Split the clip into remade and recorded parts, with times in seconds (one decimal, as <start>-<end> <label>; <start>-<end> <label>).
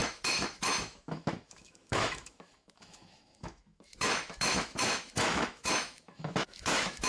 0.0-7.1 remade